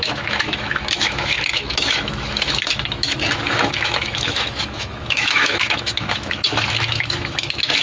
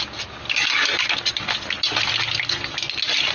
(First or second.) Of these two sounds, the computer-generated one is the first